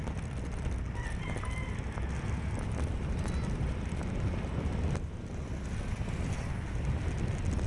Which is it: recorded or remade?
recorded